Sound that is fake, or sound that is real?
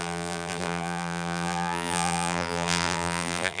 fake